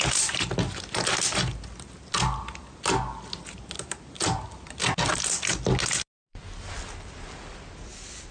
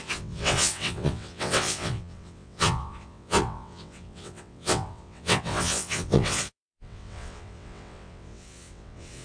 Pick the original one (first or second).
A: first